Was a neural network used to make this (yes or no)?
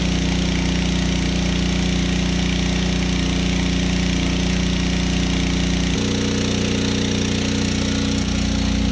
no